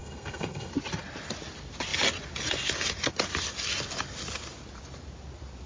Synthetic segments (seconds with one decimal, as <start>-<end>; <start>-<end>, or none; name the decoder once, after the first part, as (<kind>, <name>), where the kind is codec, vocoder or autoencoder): 0.0-0.7 (codec, SNAC)